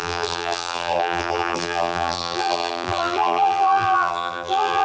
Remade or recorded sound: remade